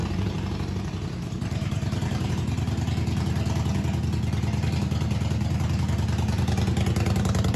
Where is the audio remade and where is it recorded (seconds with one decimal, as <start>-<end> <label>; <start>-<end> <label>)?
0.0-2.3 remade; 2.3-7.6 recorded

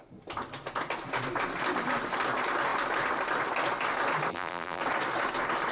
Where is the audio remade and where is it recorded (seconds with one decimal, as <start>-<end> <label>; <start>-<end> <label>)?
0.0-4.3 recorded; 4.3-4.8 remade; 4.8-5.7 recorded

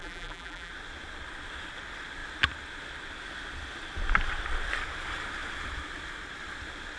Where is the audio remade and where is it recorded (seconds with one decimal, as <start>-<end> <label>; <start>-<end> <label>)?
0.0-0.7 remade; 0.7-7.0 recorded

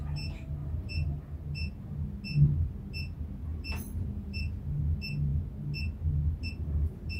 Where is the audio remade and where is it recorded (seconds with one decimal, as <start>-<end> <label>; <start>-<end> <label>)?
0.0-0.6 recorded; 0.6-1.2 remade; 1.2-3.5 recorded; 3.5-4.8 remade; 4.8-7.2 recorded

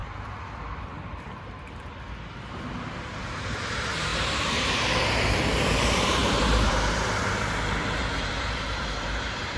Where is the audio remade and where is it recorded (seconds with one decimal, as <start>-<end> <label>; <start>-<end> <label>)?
0.0-2.9 recorded; 2.9-9.6 remade